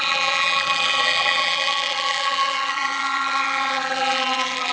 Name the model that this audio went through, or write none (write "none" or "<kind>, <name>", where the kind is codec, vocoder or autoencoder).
vocoder, BigVGAN v2